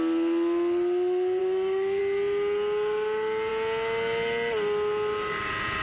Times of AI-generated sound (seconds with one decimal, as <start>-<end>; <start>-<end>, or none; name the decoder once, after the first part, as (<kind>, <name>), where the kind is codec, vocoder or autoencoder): 1.4-2.0 (codec, DAC)